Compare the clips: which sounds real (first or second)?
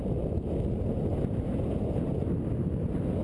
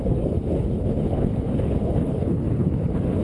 first